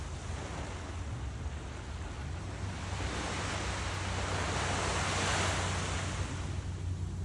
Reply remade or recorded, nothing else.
recorded